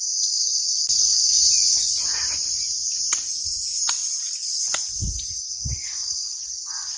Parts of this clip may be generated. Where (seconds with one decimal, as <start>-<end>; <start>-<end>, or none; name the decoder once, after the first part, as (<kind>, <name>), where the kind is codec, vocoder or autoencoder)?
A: none